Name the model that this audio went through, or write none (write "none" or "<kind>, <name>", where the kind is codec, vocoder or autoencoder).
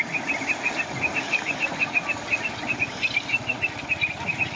none